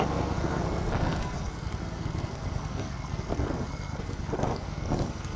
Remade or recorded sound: remade